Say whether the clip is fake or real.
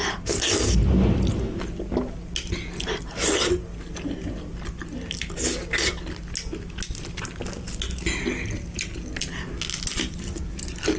real